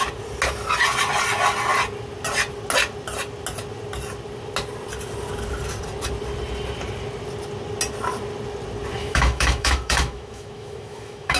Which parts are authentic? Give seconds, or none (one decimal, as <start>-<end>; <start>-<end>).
0.0-9.0